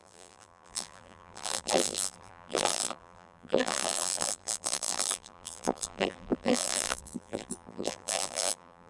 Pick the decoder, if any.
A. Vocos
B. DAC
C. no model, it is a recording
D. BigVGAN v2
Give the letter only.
D